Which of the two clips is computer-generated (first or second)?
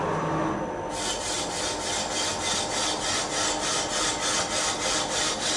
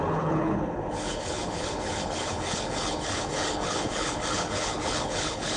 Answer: second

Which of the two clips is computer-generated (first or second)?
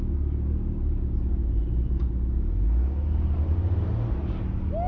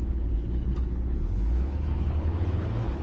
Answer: second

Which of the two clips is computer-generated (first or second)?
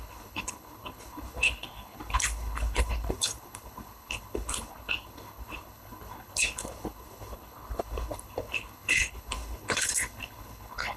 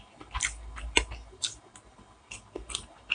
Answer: first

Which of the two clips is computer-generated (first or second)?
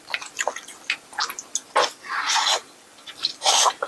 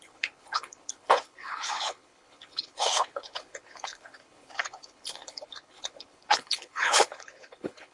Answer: second